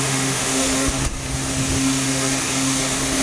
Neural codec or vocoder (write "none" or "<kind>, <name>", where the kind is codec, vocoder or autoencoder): autoencoder, DAC-VAE